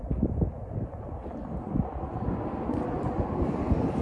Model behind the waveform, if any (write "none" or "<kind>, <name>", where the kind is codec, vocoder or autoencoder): none